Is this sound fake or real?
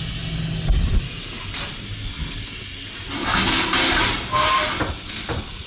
real